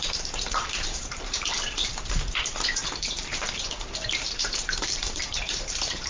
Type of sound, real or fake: fake